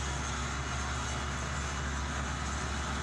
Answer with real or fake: real